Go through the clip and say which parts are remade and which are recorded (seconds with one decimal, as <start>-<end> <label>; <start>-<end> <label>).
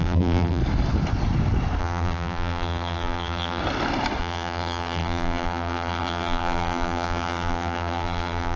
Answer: 0.0-0.6 remade; 0.6-1.8 recorded; 1.8-3.6 remade; 3.6-4.2 recorded; 4.2-8.6 remade